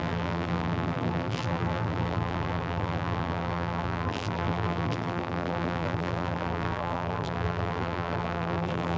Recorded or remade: remade